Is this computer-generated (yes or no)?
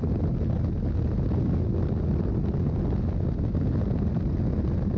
no